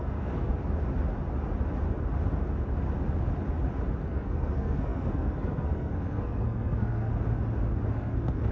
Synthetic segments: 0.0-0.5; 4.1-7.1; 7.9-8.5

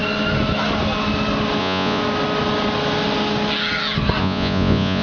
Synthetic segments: 1.6-2.0; 4.2-5.0

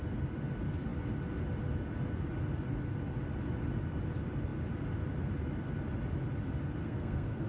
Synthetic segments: 6.8-7.5